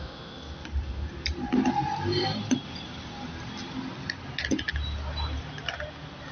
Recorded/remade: recorded